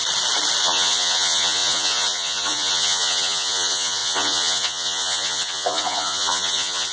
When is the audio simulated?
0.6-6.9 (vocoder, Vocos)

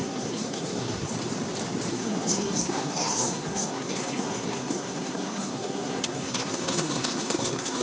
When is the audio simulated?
0.0-1.1 (codec, SNAC); 1.9-7.8

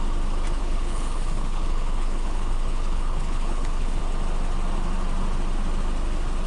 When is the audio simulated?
0.6-4.0 (codec, HILCodec)

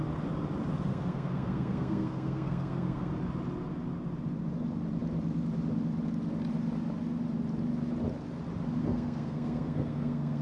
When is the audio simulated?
0.9-3.1 (codec, SNAC); 8.8-10.4

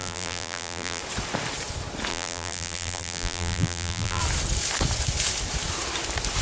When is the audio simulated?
0.0-1.0 (vocoder, BigVGAN v2); 2.1-4.2

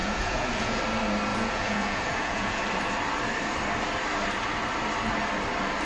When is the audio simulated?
0.0-0.8 (vocoder, Vocos); 1.3-2.6

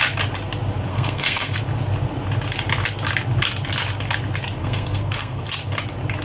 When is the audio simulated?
0.9-1.6 (codec, SNAC); 4.6-5.4

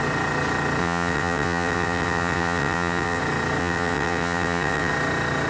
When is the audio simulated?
0.8-3.2 (vocoder, WaveNeXt); 3.6-4.9